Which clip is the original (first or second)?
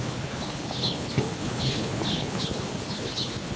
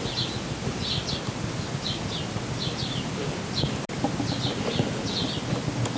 second